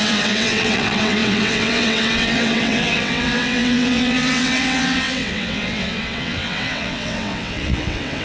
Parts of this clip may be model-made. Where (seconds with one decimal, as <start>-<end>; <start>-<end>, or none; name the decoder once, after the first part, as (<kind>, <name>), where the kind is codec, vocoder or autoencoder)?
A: 0.0-8.2 (vocoder, WaveNeXt)